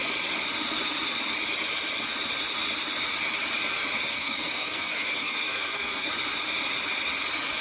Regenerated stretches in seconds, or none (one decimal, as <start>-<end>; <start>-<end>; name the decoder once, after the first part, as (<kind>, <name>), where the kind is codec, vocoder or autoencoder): 4.1-6.1 (codec, SNAC)